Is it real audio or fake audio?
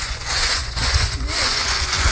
fake